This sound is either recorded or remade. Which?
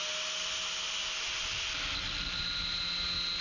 recorded